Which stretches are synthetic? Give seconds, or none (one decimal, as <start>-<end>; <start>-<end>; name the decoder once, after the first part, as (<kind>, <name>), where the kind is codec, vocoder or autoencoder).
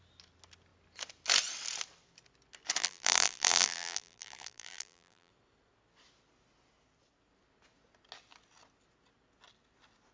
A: 2.8-5.3 (vocoder, BigVGAN v2)